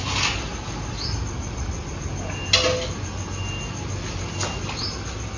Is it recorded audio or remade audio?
recorded